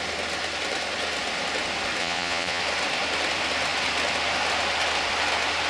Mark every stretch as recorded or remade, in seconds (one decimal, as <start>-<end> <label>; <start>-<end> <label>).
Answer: 0.0-2.0 recorded; 2.0-2.6 remade; 2.6-5.7 recorded

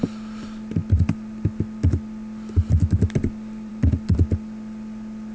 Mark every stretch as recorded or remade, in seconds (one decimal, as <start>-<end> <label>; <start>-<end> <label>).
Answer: 0.0-5.3 recorded

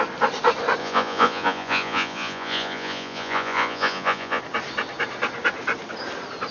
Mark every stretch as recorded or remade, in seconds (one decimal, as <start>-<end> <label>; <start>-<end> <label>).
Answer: 0.0-0.8 recorded; 0.8-4.4 remade; 4.4-6.5 recorded

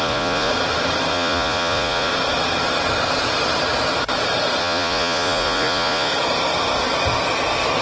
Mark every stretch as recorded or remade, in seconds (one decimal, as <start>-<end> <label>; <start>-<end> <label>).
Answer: 0.0-0.5 remade; 0.5-1.1 recorded; 1.1-2.1 remade; 2.1-4.6 recorded; 4.6-6.1 remade; 6.1-7.8 recorded

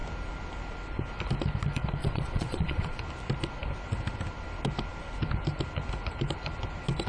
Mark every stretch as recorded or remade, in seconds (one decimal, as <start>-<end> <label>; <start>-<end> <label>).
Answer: 0.0-2.0 recorded; 2.0-3.0 remade; 3.0-7.1 recorded

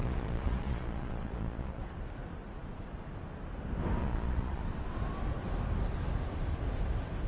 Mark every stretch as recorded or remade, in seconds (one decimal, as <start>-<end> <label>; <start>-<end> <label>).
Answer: 0.0-1.8 remade; 1.8-4.0 recorded; 4.0-4.6 remade; 4.6-7.3 recorded